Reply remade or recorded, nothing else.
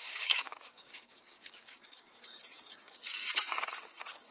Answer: remade